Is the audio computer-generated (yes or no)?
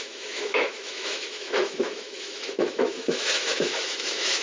yes